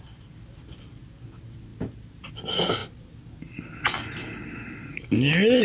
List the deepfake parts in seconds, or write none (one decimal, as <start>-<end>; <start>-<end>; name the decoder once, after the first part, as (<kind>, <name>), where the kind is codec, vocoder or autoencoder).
none